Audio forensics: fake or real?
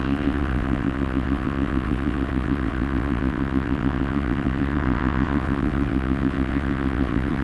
fake